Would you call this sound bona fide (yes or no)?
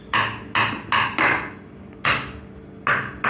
yes